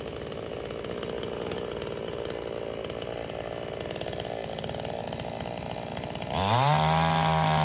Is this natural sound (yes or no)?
yes